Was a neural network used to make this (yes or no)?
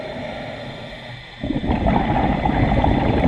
no